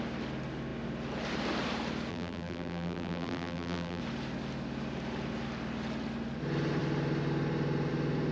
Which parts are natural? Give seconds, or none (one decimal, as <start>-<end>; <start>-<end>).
0.0-2.1; 4.0-8.3